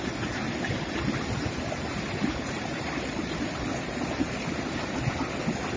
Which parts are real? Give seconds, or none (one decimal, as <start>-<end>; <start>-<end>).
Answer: 0.0-0.4; 1.0-1.9; 5.2-5.8